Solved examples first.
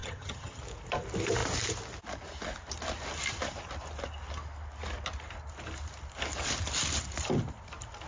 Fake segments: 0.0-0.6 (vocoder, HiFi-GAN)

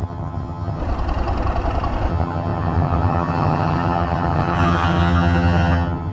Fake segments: 0.0-0.8 (vocoder, HiFi-GAN); 2.1-6.1

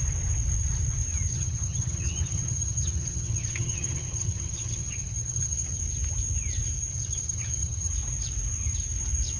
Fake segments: 1.3-5.8 (vocoder, HiFi-GAN); 6.9-7.9

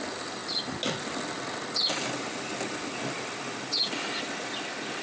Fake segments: none

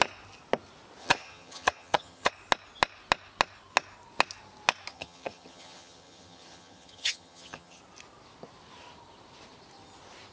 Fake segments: 1.0-2.3 (vocoder, HiFi-GAN); 4.9-7.8

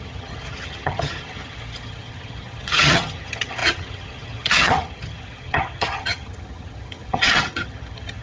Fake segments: 0.0-8.2 (vocoder, HiFi-GAN)

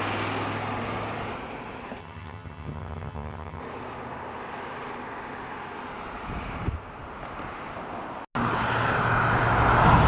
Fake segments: 2.0-3.6 (vocoder, HiFi-GAN)